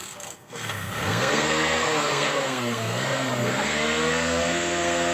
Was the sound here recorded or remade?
remade